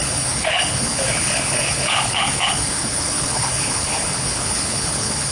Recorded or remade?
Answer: remade